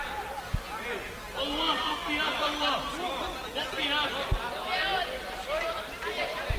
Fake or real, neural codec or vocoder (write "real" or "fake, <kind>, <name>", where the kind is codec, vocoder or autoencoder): real